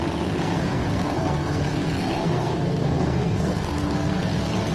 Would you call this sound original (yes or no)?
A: no